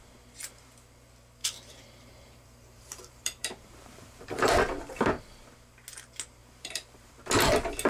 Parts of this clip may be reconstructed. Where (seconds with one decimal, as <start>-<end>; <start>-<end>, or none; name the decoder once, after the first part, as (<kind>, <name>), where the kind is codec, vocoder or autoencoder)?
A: 1.4-4.5 (vocoder, BigVGAN v2); 6.4-7.1